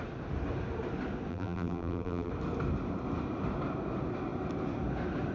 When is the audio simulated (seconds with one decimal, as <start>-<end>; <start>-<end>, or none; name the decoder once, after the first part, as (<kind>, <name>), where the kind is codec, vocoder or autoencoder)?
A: 1.3-2.3 (vocoder, BigVGAN v2)